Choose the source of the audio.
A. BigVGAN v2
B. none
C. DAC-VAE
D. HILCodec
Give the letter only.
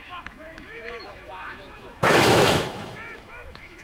C